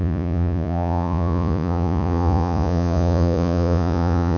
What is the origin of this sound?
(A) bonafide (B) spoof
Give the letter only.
B